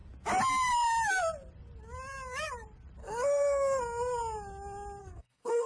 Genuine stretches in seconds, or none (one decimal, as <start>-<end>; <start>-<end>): 0.0-3.0; 3.8-5.0